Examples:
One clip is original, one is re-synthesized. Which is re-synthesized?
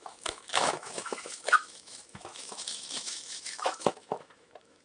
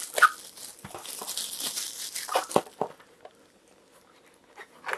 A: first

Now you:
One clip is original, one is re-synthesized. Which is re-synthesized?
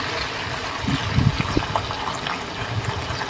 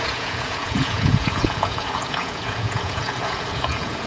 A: second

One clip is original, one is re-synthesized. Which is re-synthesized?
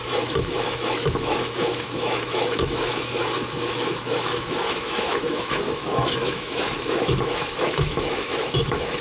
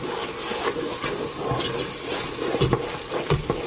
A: first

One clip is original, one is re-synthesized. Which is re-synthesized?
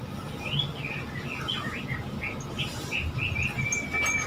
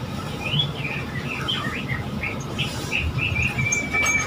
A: second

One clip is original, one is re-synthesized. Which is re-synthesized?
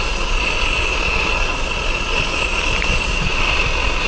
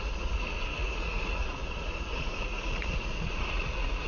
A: second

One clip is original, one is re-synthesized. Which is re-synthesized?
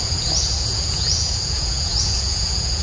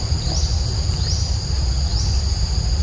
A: first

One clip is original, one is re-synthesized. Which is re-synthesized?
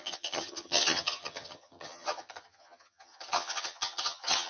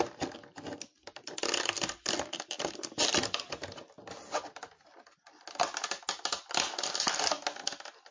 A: first